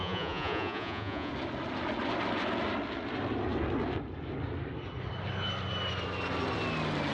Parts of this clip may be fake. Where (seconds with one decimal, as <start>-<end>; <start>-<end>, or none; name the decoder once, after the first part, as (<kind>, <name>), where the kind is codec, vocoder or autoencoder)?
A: 0.0-1.3 (vocoder, Vocos)